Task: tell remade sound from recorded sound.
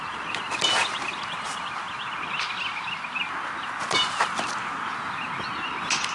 recorded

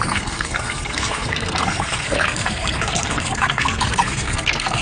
remade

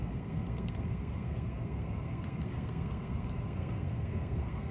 remade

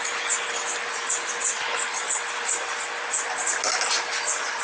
recorded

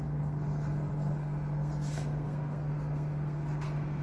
remade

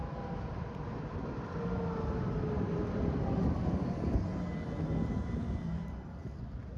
recorded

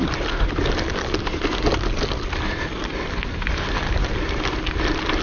recorded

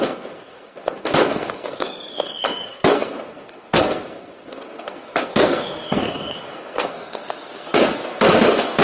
remade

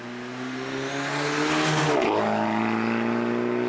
recorded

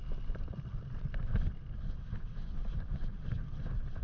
recorded